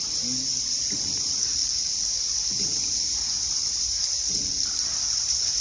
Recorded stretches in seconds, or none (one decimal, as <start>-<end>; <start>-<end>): 0.0-5.6